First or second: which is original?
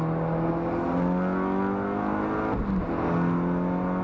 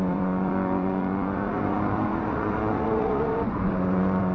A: first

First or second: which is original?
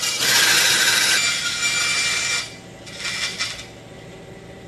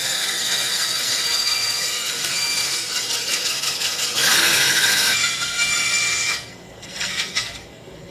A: first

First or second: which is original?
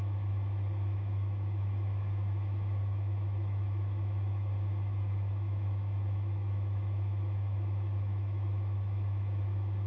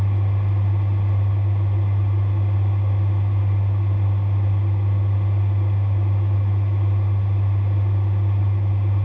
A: second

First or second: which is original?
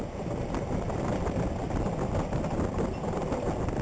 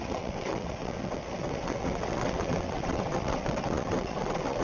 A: first